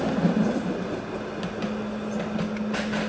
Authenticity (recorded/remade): recorded